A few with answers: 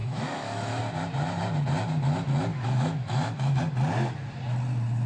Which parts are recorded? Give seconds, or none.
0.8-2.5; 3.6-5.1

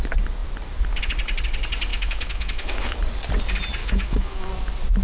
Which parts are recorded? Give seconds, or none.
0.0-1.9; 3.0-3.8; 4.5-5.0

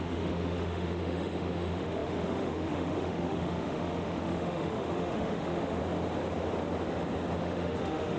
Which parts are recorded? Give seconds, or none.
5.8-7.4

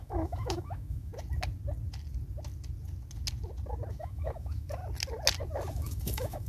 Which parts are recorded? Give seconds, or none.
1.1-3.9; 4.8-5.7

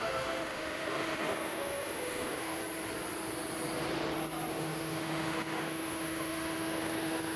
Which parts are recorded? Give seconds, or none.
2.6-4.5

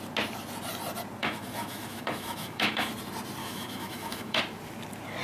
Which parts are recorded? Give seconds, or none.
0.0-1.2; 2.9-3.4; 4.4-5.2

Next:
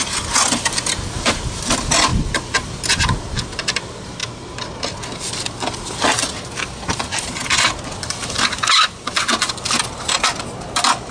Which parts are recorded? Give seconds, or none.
0.0-11.1